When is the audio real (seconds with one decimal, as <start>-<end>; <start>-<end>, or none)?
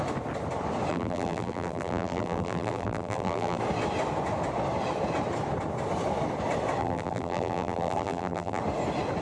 0.0-0.9; 3.6-6.8; 8.6-9.2